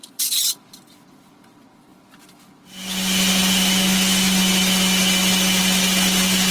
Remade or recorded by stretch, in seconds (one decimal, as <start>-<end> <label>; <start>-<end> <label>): 0.0-6.5 recorded